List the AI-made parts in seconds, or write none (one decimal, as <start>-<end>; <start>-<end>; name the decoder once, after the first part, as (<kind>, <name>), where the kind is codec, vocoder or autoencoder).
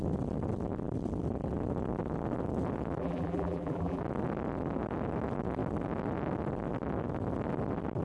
3.0-4.0 (vocoder, BigVGAN v2)